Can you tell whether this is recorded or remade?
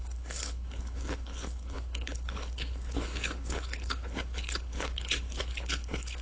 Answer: remade